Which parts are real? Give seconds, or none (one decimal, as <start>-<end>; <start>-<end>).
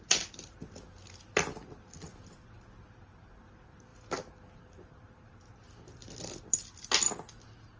0.0-7.8